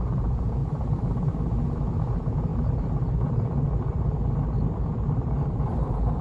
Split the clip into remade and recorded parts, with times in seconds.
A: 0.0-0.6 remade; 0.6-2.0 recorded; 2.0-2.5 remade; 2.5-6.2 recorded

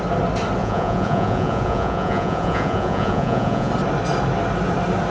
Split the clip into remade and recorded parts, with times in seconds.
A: 0.0-0.6 recorded; 0.6-3.7 remade; 3.7-5.1 recorded

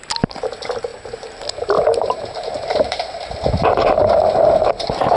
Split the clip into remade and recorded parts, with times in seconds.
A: 0.0-5.2 recorded

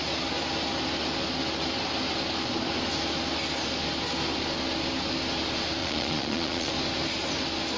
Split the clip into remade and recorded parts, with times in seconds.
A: 0.0-5.8 recorded; 5.8-6.7 remade; 6.7-7.8 recorded

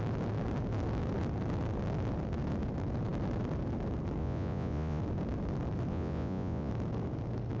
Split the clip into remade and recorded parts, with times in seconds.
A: 0.0-4.2 recorded; 4.2-5.0 remade; 5.0-5.9 recorded; 5.9-6.7 remade; 6.7-7.6 recorded

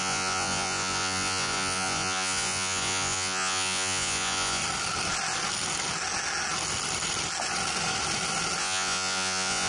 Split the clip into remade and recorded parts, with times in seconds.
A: 0.0-4.6 remade; 4.6-8.6 recorded; 8.6-9.7 remade

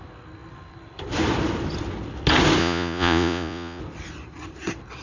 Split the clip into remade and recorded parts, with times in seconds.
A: 0.0-2.6 recorded; 2.6-3.8 remade; 3.8-5.0 recorded

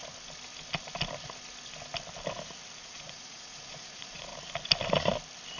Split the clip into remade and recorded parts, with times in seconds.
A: 0.0-2.8 recorded; 2.8-4.3 remade; 4.3-5.6 recorded